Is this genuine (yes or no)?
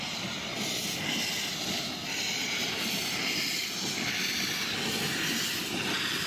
yes